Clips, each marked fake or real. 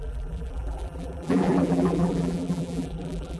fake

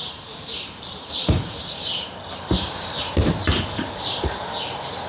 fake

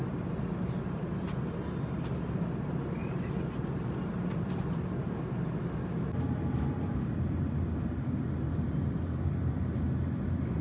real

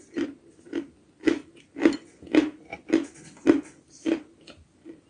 real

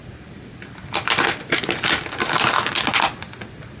real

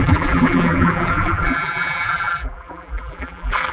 fake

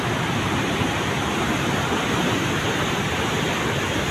real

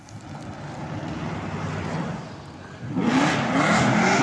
real